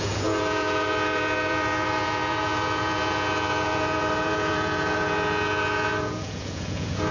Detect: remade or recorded remade